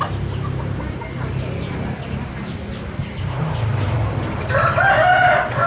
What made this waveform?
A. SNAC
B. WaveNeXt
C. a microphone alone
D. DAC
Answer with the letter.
C